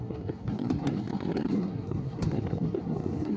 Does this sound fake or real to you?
fake